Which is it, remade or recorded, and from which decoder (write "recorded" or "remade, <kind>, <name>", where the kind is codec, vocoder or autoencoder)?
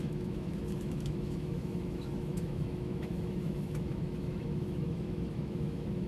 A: remade, autoencoder, DAC-VAE